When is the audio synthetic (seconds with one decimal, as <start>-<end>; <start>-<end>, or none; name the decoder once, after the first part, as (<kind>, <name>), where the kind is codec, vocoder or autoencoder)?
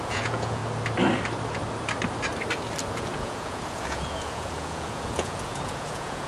0.0-0.6 (vocoder, Vocos); 2.9-6.3